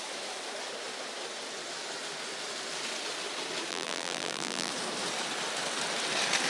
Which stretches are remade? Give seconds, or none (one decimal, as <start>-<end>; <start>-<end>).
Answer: 3.7-4.7